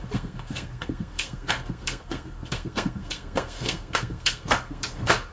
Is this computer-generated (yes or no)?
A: yes